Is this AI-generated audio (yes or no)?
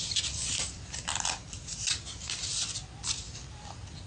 no